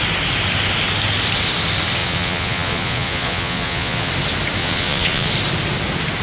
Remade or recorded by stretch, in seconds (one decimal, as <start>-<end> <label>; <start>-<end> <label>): 0.0-2.0 recorded; 2.0-4.1 remade; 4.1-4.6 recorded; 4.6-5.3 remade; 5.3-6.2 recorded